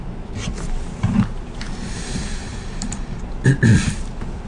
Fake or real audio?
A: real